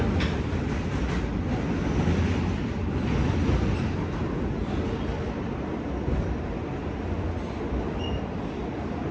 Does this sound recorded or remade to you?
recorded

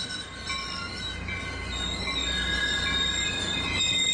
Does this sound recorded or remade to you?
recorded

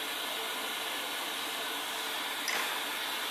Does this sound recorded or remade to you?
recorded